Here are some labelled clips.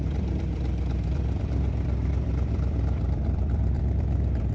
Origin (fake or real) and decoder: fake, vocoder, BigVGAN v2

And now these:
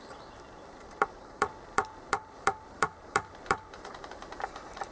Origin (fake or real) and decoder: fake, vocoder, BigVGAN v2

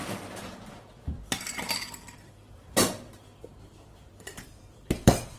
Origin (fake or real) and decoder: fake, vocoder, BigVGAN v2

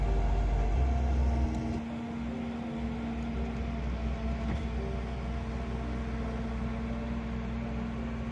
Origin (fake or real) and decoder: real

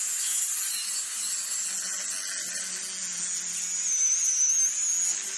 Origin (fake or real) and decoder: real